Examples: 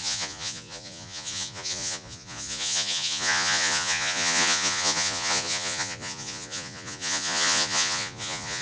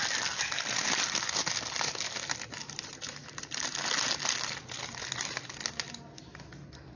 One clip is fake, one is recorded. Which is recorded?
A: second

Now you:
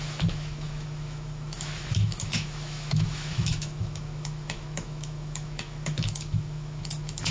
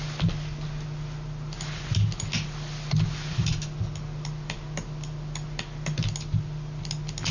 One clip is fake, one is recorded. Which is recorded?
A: second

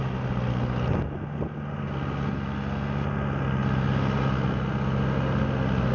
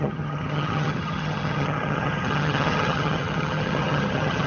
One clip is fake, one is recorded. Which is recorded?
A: first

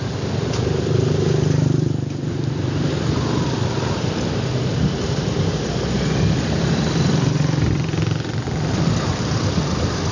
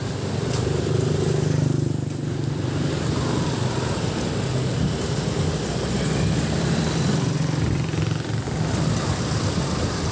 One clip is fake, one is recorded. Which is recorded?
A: second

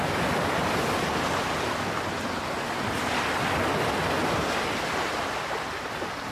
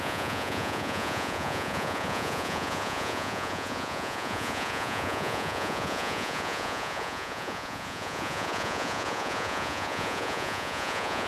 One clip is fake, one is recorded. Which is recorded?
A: first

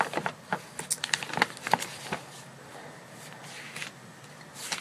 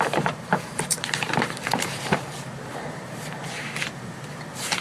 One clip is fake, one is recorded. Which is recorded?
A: first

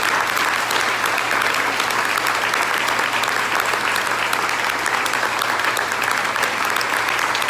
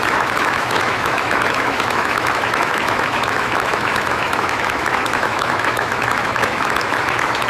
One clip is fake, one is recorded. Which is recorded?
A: first